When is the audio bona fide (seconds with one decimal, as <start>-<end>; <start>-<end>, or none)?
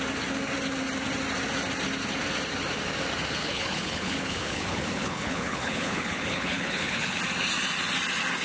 0.0-3.4; 7.2-8.4